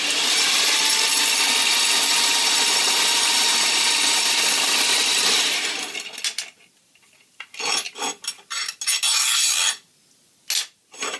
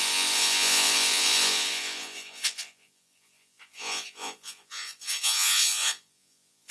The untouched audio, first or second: first